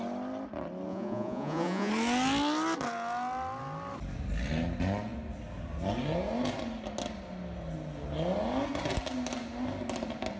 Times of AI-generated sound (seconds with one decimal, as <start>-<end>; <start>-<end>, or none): 0.9-1.9